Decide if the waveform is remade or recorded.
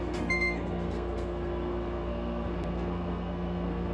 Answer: remade